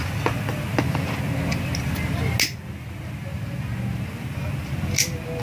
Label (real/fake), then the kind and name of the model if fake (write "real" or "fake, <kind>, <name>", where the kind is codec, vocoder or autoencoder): real